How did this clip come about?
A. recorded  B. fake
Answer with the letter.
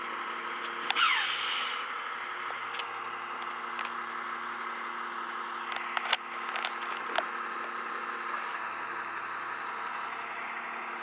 A